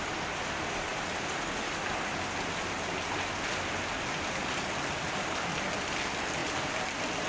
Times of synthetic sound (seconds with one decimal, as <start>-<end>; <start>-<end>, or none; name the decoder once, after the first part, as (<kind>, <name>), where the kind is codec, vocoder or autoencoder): 0.9-1.5 (vocoder, BigVGAN v2)